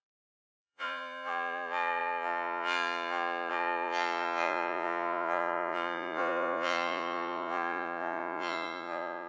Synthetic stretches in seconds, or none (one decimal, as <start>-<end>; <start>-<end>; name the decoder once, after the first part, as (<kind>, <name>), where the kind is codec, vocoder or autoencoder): 0.0-9.3 (vocoder, Vocos)